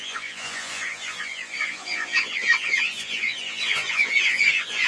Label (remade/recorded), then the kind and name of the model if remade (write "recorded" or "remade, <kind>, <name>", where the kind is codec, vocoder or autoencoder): remade, vocoder, Vocos